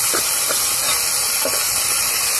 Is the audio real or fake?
real